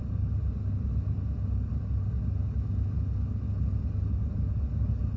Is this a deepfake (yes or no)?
no